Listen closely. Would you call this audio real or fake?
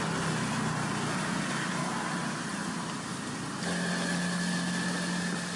real